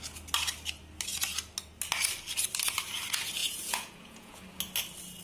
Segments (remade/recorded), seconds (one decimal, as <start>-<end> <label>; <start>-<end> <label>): 0.0-3.4 recorded; 3.4-4.4 remade; 4.4-5.2 recorded